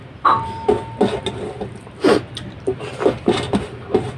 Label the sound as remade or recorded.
recorded